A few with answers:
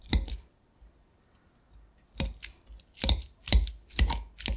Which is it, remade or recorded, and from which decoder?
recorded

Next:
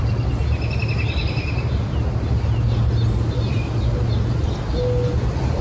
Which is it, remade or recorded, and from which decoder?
recorded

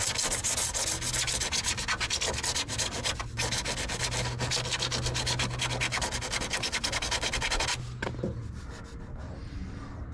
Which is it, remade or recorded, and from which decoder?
recorded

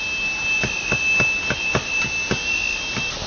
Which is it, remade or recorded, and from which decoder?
recorded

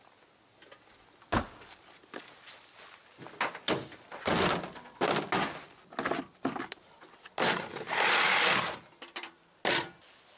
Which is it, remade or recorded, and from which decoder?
recorded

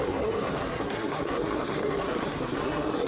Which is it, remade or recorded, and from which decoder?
remade, codec, SNAC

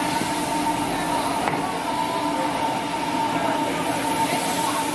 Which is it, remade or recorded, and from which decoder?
recorded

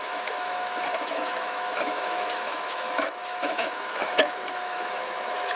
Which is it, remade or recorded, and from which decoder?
remade, autoencoder, DAC-VAE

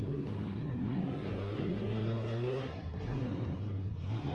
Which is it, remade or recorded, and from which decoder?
remade, codec, SNAC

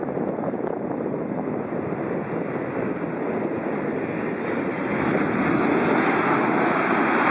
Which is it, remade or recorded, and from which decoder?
recorded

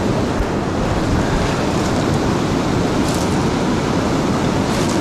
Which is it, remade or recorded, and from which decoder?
recorded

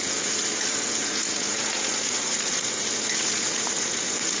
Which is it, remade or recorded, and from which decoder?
remade, vocoder, Vocos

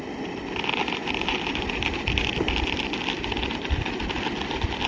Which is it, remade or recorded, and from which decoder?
recorded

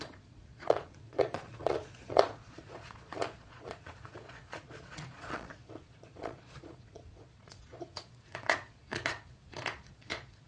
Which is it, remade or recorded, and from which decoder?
remade, vocoder, Vocos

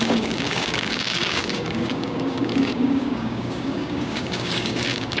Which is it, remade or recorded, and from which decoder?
remade, codec, DAC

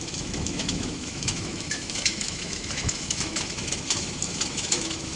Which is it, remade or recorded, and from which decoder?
remade, autoencoder, DAC-VAE